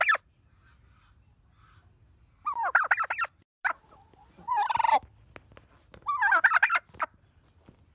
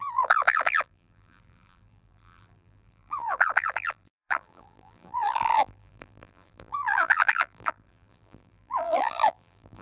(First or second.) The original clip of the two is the first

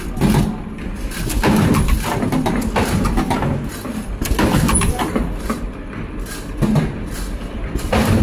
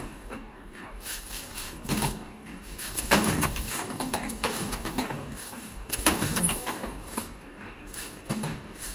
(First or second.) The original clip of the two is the first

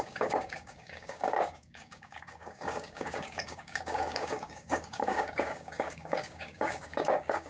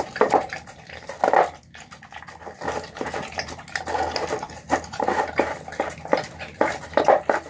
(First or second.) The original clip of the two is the second